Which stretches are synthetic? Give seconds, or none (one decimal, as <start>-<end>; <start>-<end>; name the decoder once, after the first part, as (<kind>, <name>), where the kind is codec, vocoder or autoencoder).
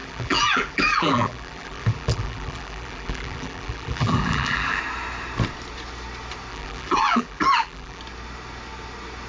0.0-4.8 (vocoder, BigVGAN v2); 6.5-8.0